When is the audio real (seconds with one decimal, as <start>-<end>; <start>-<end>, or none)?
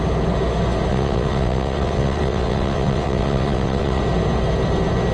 0.0-0.9; 4.0-5.1